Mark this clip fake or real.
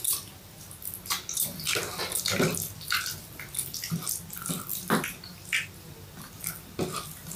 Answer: real